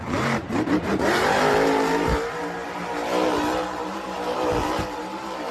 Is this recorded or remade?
remade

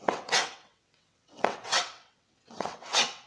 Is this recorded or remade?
remade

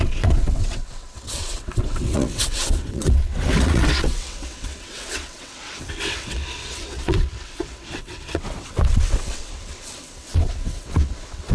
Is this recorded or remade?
remade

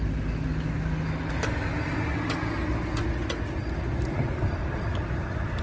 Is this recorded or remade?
recorded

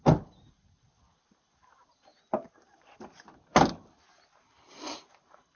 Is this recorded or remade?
recorded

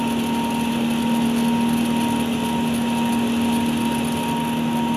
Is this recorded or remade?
recorded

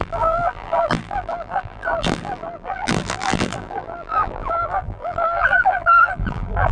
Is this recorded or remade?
remade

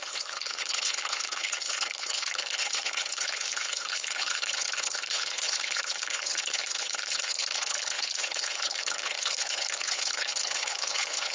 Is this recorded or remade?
remade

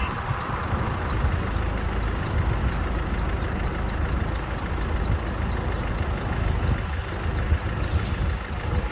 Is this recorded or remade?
recorded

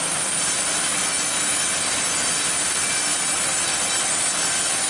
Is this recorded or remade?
recorded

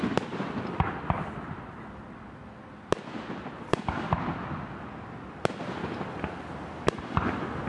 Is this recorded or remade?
recorded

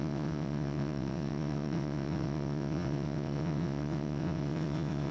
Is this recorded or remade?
remade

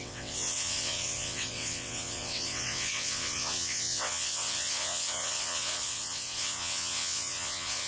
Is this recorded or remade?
remade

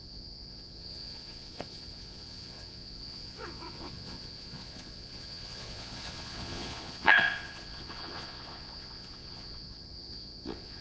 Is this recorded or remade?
remade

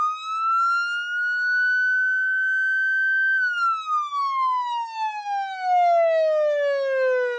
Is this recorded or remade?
recorded